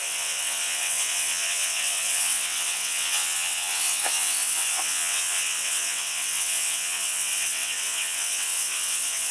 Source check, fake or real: fake